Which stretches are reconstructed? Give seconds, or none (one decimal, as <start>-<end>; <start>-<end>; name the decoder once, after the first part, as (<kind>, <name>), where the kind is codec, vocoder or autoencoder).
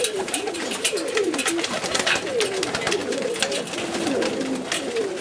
0.0-1.5 (vocoder, BigVGAN v2)